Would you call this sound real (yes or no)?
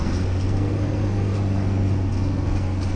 no